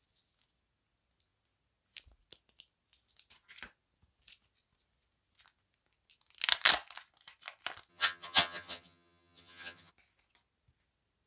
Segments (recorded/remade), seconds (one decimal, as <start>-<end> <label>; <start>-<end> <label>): 0.0-7.9 recorded; 7.9-9.9 remade; 9.9-11.3 recorded